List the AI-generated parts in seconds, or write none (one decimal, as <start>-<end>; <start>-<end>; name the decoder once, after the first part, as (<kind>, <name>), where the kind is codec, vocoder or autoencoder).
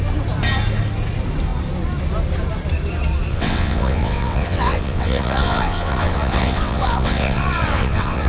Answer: 3.3-8.3 (vocoder, WaveNeXt)